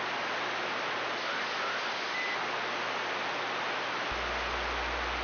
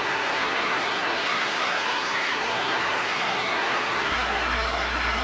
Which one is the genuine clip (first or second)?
first